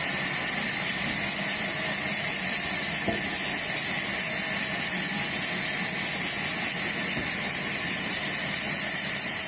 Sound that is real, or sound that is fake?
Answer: real